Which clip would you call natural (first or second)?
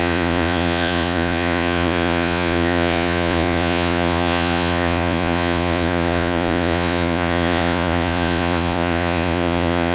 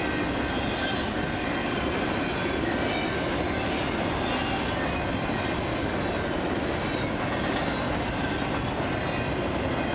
second